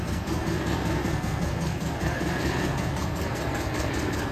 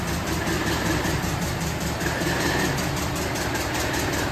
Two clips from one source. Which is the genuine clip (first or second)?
second